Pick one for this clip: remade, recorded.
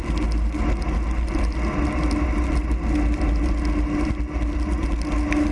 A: recorded